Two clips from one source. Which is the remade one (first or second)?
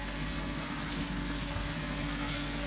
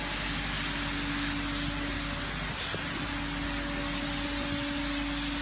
first